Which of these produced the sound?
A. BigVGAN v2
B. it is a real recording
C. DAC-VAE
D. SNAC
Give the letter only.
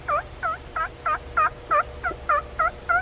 B